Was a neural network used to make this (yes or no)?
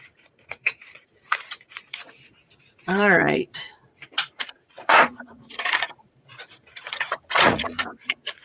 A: yes